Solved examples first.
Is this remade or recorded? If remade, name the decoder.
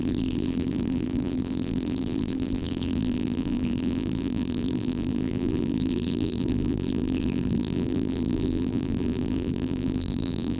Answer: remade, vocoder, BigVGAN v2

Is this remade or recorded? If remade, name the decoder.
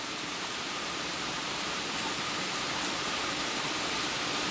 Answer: remade, vocoder, BigVGAN v2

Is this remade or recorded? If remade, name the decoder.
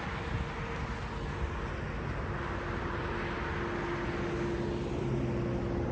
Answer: recorded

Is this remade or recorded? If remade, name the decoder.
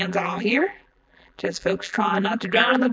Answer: remade, vocoder, BigVGAN v2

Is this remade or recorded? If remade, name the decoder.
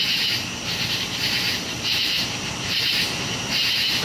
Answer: remade, vocoder, BigVGAN v2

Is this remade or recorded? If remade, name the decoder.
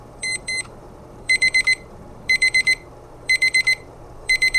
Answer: remade, vocoder, BigVGAN v2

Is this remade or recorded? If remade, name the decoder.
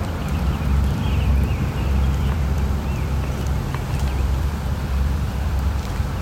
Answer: remade, vocoder, BigVGAN v2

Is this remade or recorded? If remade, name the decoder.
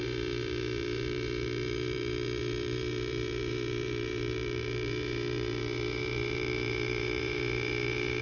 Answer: remade, vocoder, BigVGAN v2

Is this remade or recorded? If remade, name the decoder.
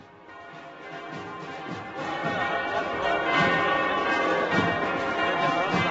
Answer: recorded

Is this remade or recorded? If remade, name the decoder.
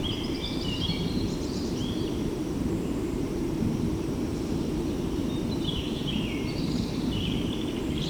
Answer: remade, vocoder, BigVGAN v2